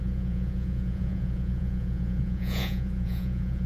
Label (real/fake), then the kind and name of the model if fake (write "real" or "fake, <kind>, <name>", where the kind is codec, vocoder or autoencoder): fake, vocoder, Vocos